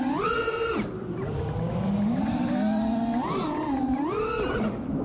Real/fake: real